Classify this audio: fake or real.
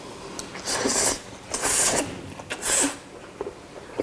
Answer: real